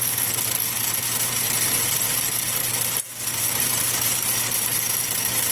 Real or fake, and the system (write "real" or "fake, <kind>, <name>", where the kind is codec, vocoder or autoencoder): real